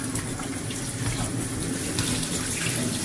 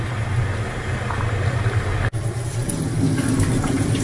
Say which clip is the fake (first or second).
first